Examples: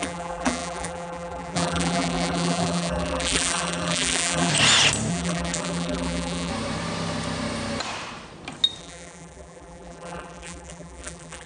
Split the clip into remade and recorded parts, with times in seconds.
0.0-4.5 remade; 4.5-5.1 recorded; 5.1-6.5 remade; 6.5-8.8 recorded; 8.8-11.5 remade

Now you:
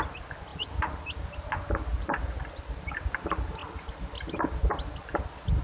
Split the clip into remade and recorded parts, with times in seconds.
0.0-0.5 recorded; 0.5-1.3 remade; 1.3-1.9 recorded; 1.9-2.9 remade; 2.9-3.6 recorded; 3.6-5.6 remade

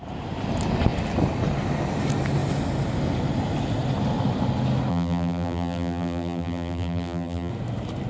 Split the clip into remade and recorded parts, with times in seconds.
0.0-4.9 recorded; 4.9-7.5 remade; 7.5-8.1 recorded

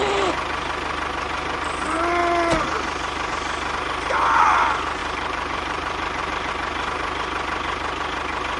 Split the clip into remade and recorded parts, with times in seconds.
0.0-5.0 recorded; 5.0-6.5 remade; 6.5-8.6 recorded

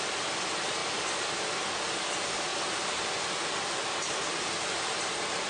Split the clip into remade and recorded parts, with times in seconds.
0.0-0.8 recorded; 0.8-1.7 remade; 1.7-2.5 recorded; 2.5-4.8 remade; 4.8-5.5 recorded